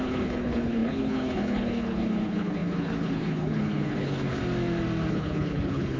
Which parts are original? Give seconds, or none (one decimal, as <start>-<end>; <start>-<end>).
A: 4.4-5.1